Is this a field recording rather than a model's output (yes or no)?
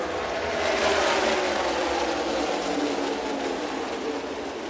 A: yes